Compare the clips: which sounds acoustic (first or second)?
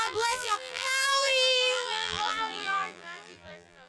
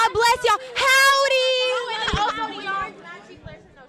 second